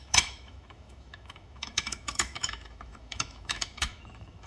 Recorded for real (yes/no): no